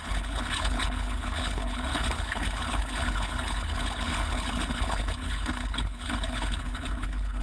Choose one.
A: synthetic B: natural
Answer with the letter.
A